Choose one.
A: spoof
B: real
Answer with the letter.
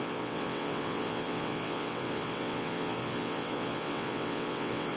A